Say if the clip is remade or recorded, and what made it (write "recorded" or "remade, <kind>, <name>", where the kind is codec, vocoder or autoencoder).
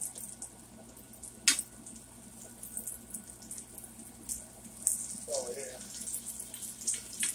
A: recorded